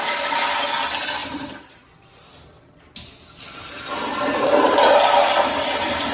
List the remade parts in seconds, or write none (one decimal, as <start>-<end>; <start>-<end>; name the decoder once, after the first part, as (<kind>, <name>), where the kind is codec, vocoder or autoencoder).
0.0-0.5 (vocoder, BigVGAN v2); 1.2-1.9; 4.1-4.8